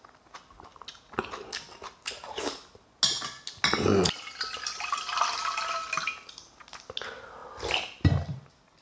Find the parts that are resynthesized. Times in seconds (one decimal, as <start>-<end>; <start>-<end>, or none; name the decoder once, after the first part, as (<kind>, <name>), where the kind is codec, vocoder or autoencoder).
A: none